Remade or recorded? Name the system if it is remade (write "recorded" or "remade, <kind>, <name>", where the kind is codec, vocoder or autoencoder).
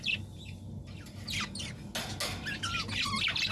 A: recorded